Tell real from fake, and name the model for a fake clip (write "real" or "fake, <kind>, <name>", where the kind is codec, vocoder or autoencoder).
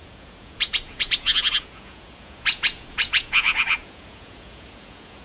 fake, vocoder, Vocos